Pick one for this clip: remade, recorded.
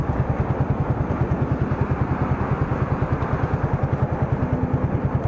recorded